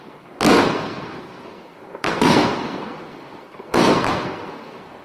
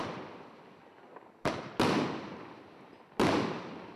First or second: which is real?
second